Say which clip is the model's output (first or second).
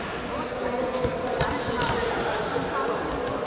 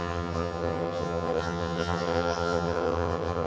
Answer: second